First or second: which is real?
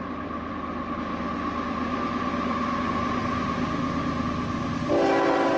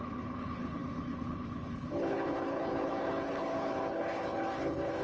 first